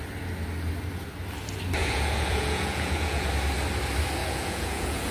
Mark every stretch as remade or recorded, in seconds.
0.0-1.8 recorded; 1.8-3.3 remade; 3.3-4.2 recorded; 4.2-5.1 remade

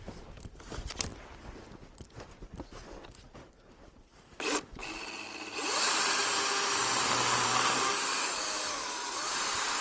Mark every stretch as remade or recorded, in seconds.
0.0-1.1 remade; 1.1-3.5 recorded; 3.5-4.8 remade; 4.8-5.7 recorded; 5.7-6.2 remade; 6.2-8.5 recorded; 8.5-9.8 remade

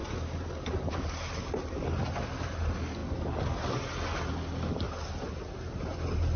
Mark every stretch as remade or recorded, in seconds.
0.0-6.4 recorded